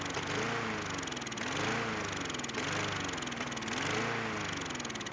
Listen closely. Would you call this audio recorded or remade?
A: recorded